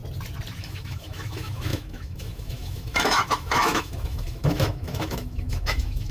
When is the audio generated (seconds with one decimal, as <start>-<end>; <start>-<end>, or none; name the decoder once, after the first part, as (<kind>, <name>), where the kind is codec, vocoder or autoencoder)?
0.6-6.1 (autoencoder, DAC-VAE)